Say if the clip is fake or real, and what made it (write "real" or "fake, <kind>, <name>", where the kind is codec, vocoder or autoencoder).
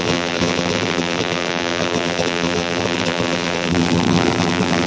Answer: fake, vocoder, BigVGAN v2